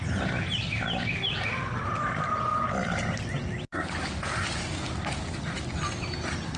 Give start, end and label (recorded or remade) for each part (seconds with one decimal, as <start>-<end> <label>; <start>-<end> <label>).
0.0-6.6 recorded